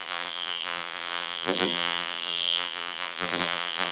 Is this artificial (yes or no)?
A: yes